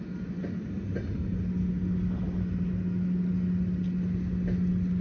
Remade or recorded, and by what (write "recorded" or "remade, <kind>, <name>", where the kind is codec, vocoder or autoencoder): recorded